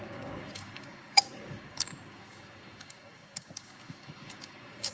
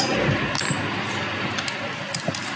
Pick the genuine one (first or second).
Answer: second